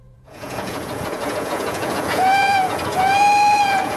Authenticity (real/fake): fake